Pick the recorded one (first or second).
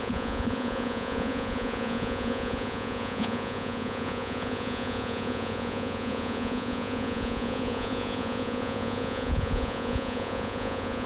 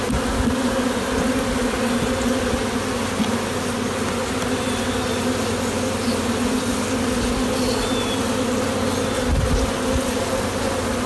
second